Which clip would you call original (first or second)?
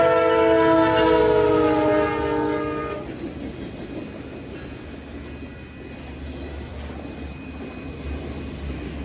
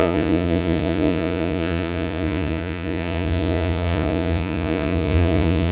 first